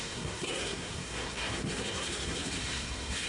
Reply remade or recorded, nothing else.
remade